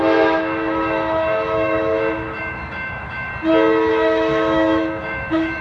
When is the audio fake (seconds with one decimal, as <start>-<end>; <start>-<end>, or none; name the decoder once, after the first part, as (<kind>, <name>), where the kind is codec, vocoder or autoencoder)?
0.0-3.3 (autoencoder, DAC-VAE); 3.9-5.6